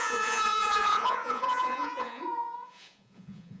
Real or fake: fake